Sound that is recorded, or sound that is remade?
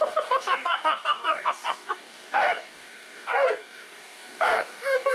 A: remade